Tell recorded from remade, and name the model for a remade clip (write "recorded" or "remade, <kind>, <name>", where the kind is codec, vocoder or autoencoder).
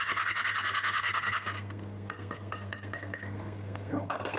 remade, codec, SNAC